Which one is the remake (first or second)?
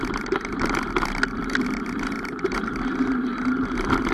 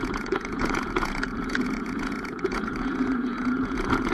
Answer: second